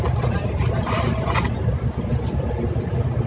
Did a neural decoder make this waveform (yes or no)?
no